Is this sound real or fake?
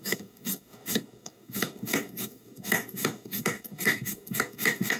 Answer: fake